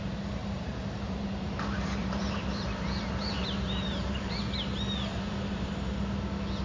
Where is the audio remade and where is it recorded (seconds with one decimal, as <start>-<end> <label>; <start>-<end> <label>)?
0.0-0.4 recorded; 0.4-4.4 remade; 4.4-5.1 recorded; 5.1-5.7 remade; 5.7-6.6 recorded